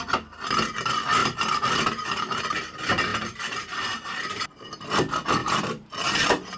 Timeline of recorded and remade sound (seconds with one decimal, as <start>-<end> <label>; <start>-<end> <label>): 0.0-1.2 recorded; 1.2-2.4 remade; 2.4-3.1 recorded; 3.1-4.7 remade; 4.7-5.4 recorded; 5.4-6.6 remade